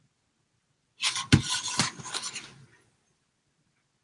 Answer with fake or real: real